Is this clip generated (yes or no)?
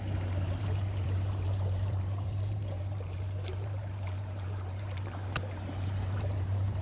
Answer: yes